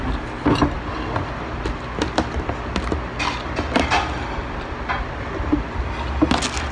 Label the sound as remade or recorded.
recorded